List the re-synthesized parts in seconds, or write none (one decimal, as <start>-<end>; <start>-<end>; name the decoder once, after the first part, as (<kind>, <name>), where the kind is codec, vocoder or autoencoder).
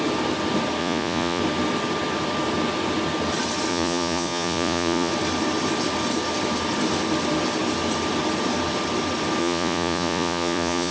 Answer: 0.8-1.4 (vocoder, Vocos); 3.7-5.1; 9.4-10.9